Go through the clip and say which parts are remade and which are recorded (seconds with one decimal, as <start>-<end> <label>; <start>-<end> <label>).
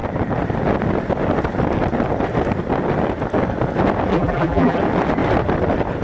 0.0-4.1 recorded; 4.1-4.8 remade; 4.8-6.0 recorded